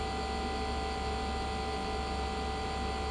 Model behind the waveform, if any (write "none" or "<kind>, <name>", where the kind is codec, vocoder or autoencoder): none